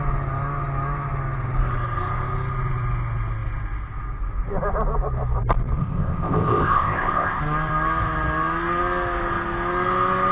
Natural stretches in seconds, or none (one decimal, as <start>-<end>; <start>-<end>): 0.0-5.8; 7.4-10.3